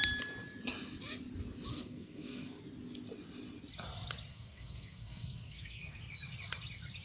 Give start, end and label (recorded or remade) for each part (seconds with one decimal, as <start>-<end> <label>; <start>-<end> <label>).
0.0-1.7 recorded; 1.7-2.6 remade; 2.6-4.3 recorded; 4.3-6.0 remade; 6.0-7.0 recorded